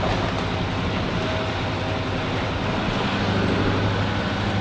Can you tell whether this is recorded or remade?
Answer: recorded